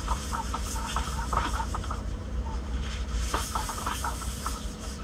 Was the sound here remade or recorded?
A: remade